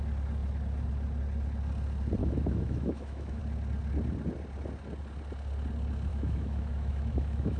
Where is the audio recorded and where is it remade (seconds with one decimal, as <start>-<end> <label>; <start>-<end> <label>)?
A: 0.0-2.2 recorded; 2.2-3.4 remade; 3.4-6.1 recorded; 6.1-7.6 remade